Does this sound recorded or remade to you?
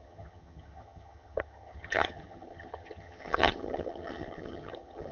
remade